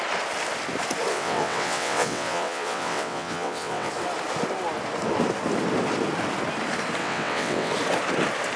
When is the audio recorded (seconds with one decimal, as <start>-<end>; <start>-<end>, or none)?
0.0-1.1; 3.9-7.0; 7.7-8.6